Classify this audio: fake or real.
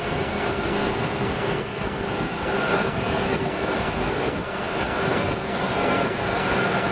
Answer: fake